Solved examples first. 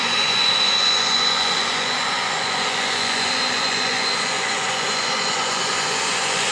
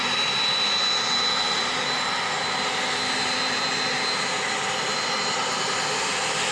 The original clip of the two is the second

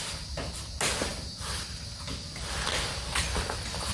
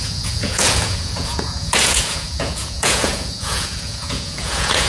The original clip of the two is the first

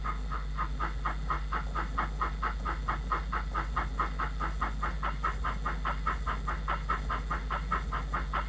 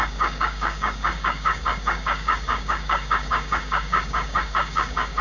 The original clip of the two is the first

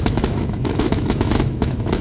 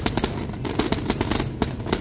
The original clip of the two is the second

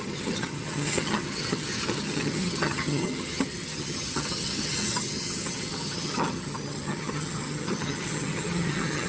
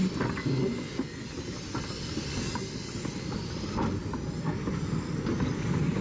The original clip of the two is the second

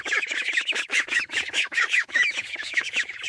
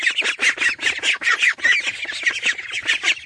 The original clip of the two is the second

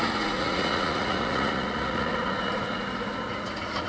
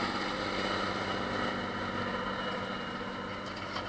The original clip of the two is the second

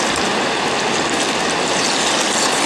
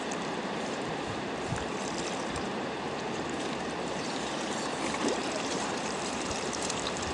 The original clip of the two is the first